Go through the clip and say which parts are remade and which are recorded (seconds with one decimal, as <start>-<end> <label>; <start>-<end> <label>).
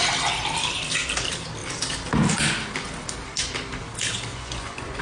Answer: 0.0-4.3 recorded; 4.3-5.0 remade